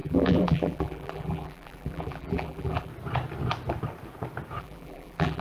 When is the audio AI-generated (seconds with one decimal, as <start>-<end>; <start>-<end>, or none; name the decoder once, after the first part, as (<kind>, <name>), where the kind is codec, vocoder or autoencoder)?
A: 0.0-2.9 (vocoder, BigVGAN v2); 4.6-5.4